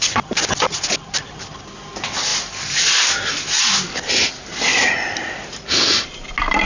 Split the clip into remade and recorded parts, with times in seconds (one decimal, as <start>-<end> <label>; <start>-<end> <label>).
0.0-6.7 recorded